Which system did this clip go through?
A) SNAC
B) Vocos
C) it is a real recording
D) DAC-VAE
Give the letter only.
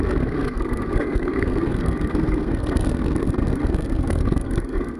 A